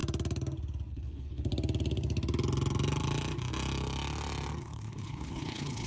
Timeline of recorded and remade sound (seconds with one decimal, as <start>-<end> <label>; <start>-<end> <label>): 0.0-0.9 recorded; 0.9-1.5 remade; 1.5-4.6 recorded; 4.6-5.9 remade